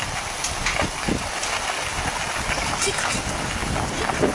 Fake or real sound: real